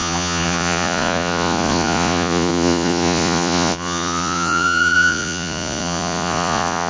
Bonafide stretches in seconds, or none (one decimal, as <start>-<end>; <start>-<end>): none